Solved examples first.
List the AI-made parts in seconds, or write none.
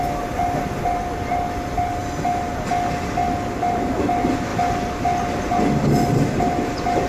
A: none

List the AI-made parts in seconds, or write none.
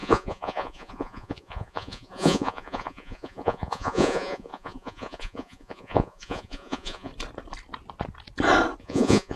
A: 0.0-7.1 (vocoder, Vocos); 8.8-9.4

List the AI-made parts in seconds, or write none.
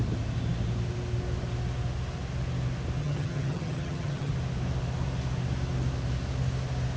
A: 3.0-4.3 (vocoder, HiFi-GAN)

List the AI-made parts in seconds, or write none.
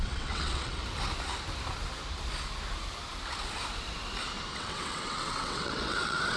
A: 0.0-0.8 (vocoder, WaveNeXt); 4.5-6.4